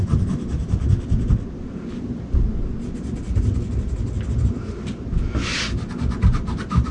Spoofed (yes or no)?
no